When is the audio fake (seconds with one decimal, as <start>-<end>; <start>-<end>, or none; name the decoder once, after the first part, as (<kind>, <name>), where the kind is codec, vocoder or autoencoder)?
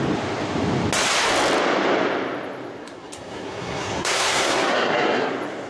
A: 2.8-5.3 (codec, SNAC)